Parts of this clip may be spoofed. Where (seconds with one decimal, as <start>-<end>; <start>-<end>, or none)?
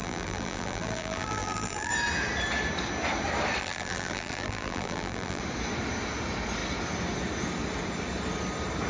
0.0-1.9; 3.6-5.4